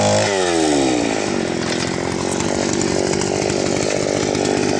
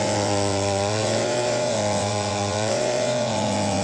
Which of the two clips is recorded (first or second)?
first